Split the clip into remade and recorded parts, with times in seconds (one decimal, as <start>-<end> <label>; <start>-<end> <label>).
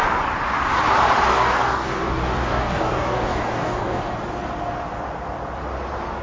0.0-1.3 recorded; 1.3-4.0 remade; 4.0-6.2 recorded